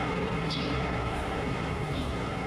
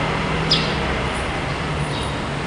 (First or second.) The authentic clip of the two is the second